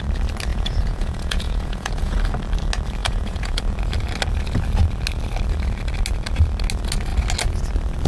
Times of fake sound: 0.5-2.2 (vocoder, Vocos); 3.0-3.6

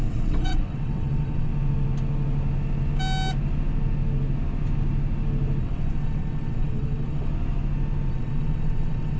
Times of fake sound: 0.0-1.5 (vocoder, WaveNeXt); 5.6-7.3; 8.1-9.2

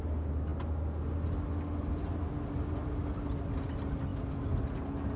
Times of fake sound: none

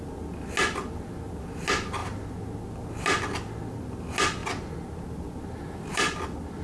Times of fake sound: none

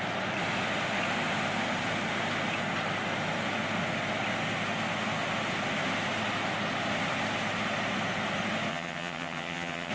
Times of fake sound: 8.7-9.9 (vocoder, HiFi-GAN)